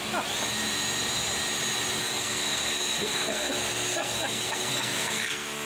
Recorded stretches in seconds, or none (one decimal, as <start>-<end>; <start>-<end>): 0.0-2.0